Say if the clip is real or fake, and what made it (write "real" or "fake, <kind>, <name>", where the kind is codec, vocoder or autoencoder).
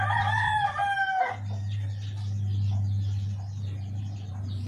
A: real